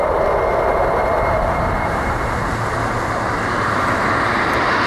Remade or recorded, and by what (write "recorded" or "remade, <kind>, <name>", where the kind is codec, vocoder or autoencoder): recorded